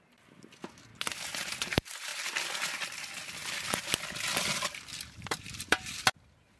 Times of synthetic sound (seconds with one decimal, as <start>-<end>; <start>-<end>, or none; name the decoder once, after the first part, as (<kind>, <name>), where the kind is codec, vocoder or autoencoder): 3.4-6.0 (vocoder, BigVGAN v2)